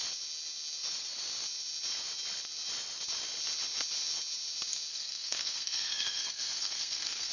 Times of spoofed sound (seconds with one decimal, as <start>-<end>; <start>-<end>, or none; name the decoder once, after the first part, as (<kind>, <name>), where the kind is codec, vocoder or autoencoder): 4.9-7.3 (codec, SNAC)